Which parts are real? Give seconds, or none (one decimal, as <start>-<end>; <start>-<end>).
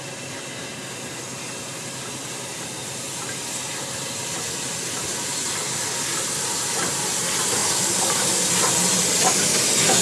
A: 0.0-7.6; 8.2-10.0